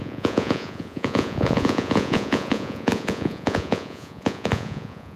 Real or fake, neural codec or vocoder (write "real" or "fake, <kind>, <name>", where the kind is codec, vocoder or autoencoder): fake, vocoder, Vocos